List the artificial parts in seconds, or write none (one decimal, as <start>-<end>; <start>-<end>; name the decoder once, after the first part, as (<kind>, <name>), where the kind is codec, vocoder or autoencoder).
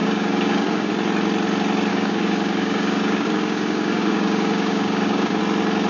0.0-0.9 (codec, DAC); 1.9-5.4